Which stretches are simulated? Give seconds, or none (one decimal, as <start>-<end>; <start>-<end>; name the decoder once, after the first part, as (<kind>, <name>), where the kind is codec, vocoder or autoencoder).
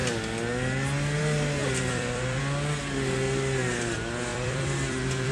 1.6-2.4 (vocoder, BigVGAN v2); 4.3-5.3